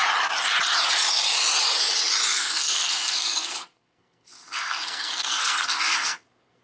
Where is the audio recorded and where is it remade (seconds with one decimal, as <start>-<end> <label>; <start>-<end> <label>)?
0.0-2.3 recorded; 2.3-6.6 remade